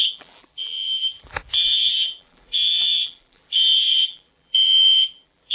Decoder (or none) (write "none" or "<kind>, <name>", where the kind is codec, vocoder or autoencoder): vocoder, BigVGAN v2